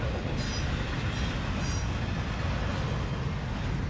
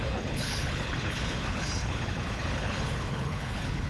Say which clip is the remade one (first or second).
second